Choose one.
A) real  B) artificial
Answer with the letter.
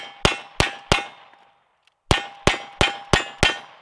A